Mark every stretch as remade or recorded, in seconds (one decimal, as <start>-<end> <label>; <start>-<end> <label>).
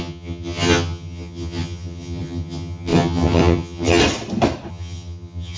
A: 0.0-4.0 remade; 4.0-4.7 recorded; 4.7-5.6 remade